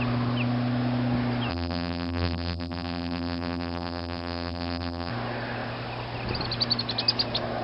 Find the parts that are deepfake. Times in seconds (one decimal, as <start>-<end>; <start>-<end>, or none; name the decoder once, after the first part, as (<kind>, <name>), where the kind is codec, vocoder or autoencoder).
1.5-5.1 (vocoder, BigVGAN v2)

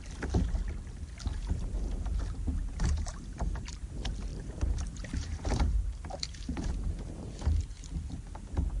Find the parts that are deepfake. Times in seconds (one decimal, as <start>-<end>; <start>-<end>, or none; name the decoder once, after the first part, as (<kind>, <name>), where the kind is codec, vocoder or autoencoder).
1.3-2.2 (vocoder, BigVGAN v2); 2.6-3.8; 4.3-7.6

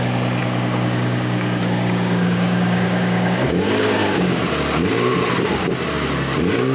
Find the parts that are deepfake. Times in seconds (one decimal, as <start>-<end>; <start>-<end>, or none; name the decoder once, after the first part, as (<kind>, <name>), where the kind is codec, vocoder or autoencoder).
0.4-4.4 (codec, DAC)

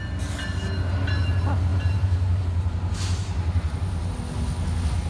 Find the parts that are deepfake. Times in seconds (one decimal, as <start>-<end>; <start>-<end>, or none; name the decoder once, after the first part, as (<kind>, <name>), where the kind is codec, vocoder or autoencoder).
1.7-4.1 (vocoder, BigVGAN v2)